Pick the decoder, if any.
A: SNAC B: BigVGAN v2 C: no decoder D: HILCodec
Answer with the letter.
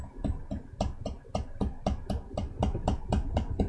B